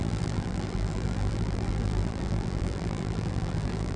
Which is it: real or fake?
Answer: fake